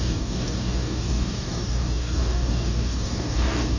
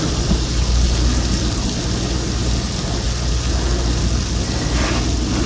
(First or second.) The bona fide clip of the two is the second